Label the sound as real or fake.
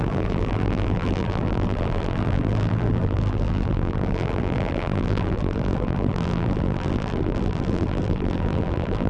fake